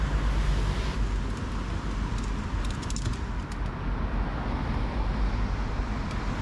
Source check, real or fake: real